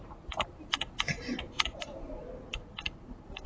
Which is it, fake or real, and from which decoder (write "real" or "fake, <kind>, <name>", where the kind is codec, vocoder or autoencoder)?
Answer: fake, vocoder, BigVGAN v2